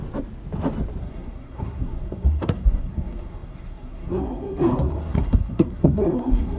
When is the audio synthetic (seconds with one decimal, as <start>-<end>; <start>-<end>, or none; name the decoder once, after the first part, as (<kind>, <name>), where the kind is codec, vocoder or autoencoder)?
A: 1.0-6.6 (codec, SNAC)